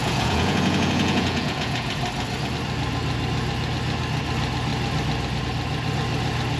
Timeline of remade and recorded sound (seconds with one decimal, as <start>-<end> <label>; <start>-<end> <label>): 0.0-1.9 remade; 1.9-6.6 recorded